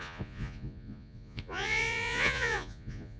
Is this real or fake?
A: fake